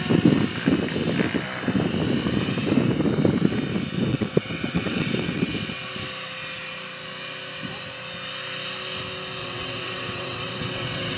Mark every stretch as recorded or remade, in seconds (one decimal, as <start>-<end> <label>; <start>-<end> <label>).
0.0-4.1 recorded; 4.1-5.5 remade; 5.5-9.4 recorded; 9.4-11.2 remade